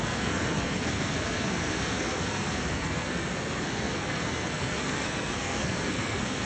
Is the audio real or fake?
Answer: fake